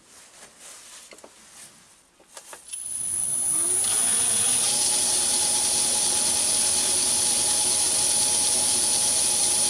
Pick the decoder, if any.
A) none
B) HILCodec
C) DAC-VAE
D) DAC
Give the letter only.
A